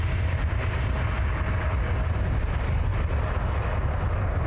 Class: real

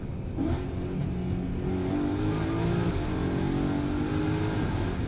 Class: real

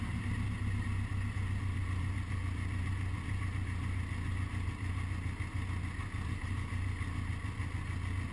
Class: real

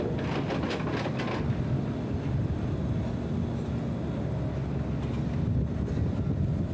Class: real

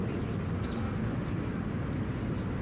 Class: real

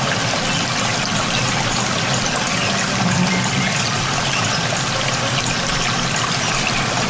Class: real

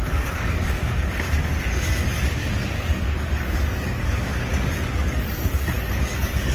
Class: fake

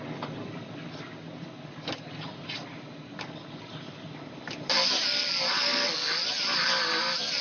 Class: real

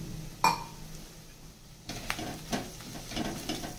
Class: real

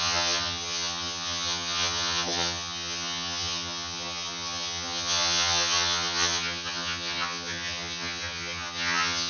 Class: fake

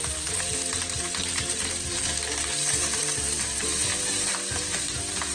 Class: fake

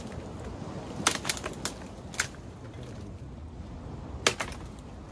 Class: real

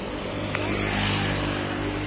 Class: real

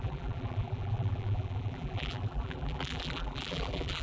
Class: fake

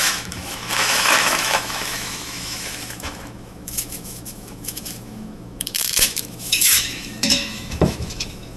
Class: fake